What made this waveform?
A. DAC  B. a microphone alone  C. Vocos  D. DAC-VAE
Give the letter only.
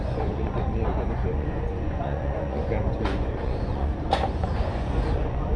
C